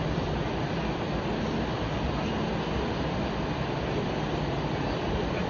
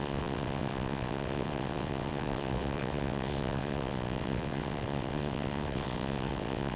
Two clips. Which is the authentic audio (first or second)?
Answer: first